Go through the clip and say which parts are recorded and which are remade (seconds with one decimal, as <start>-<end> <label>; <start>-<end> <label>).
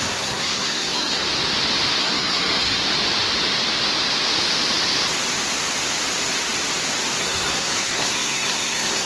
0.0-1.2 remade; 1.2-2.0 recorded; 2.0-2.8 remade; 2.8-7.2 recorded; 7.2-9.1 remade